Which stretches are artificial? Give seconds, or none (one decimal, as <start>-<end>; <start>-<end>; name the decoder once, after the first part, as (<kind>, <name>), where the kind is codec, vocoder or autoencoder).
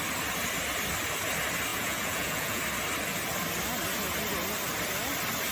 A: 1.7-2.6 (vocoder, Vocos)